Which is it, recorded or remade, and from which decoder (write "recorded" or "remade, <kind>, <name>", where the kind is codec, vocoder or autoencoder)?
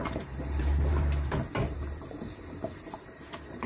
remade, vocoder, BigVGAN v2